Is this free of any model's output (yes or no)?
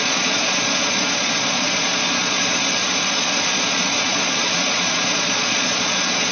no